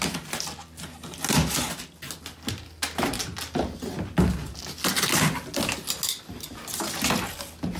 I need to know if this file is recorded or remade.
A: recorded